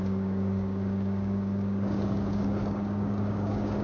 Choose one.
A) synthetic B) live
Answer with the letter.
A